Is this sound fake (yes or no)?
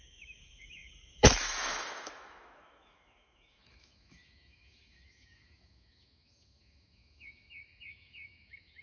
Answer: yes